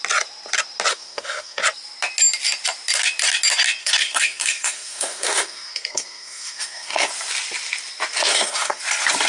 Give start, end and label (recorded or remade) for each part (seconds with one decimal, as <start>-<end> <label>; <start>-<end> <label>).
0.0-0.9 recorded; 0.9-1.6 remade; 1.6-3.8 recorded; 3.8-7.1 remade; 7.1-8.3 recorded; 8.3-8.8 remade; 8.8-9.3 recorded